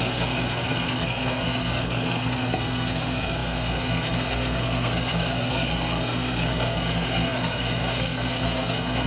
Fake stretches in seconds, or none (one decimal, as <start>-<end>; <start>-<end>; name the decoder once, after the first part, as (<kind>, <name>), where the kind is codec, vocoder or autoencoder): 0.0-9.1 (codec, SNAC)